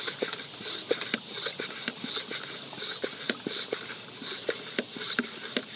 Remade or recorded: recorded